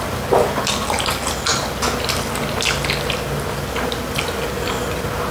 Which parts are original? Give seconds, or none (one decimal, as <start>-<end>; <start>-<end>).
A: 0.0-5.3